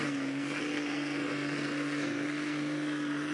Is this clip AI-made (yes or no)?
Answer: yes